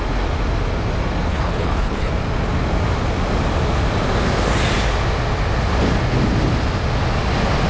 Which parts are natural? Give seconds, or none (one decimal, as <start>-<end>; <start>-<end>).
0.0-1.3; 2.1-7.7